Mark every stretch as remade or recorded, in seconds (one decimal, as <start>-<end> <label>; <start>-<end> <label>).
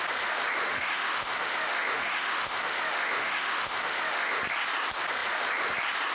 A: 0.0-0.7 recorded; 0.7-4.4 remade; 4.4-6.1 recorded